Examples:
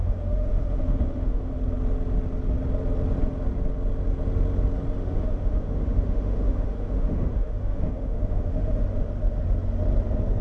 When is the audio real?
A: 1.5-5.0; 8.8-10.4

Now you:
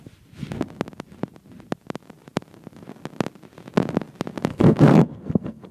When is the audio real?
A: 0.0-4.5

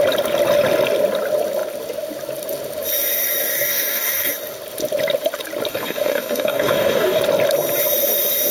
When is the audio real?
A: 0.0-3.7; 4.3-5.7; 7.2-8.5

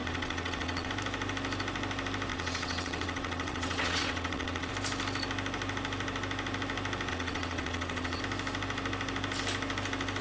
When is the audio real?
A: 0.9-2.3; 4.7-7.1; 8.2-10.2

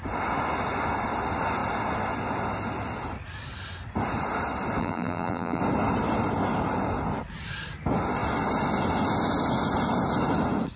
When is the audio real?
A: 0.0-4.8; 5.6-10.8

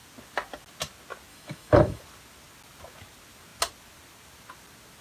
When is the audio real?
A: 0.0-1.3; 2.0-5.0

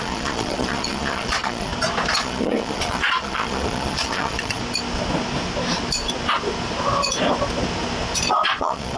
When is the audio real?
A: 1.7-2.2; 4.6-8.6

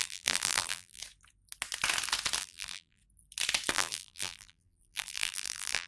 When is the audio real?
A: 1.0-2.4; 3.0-3.7